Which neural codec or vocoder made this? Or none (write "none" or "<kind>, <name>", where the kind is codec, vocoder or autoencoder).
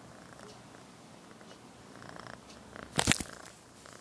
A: none